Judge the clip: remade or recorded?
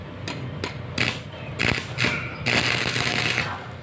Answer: recorded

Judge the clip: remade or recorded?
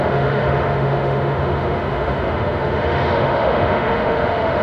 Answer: remade